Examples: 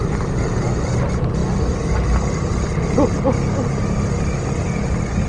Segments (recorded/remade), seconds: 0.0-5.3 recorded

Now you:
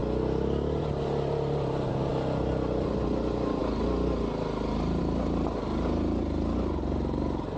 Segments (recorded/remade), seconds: 0.0-7.6 recorded

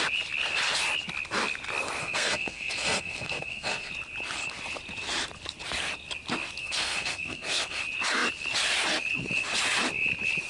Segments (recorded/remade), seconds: 0.0-2.0 recorded; 2.0-3.9 remade; 3.9-6.6 recorded; 6.6-7.8 remade; 7.8-10.5 recorded

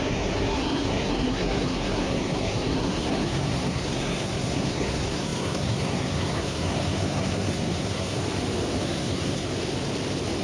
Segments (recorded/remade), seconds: 0.0-8.2 remade; 8.2-8.8 recorded; 8.8-9.5 remade; 9.5-10.4 recorded

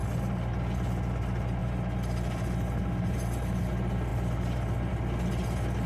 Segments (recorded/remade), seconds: 0.0-5.9 recorded

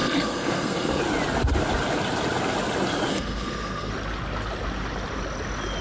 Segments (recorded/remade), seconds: 0.0-1.0 remade; 1.0-3.1 recorded; 3.1-3.9 remade; 3.9-5.8 recorded

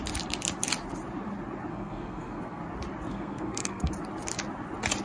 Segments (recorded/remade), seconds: 0.0-1.7 recorded; 1.7-2.6 remade; 2.6-3.1 recorded; 3.1-3.9 remade; 3.9-5.0 recorded